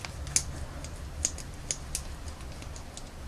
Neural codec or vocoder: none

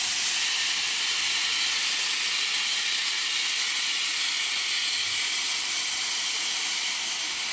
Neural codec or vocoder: none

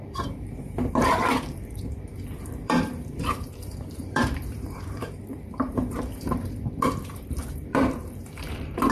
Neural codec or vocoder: vocoder, BigVGAN v2